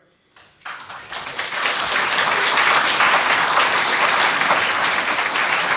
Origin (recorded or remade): recorded